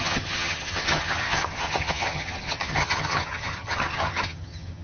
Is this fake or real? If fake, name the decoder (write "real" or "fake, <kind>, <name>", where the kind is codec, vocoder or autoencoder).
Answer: fake, vocoder, HiFi-GAN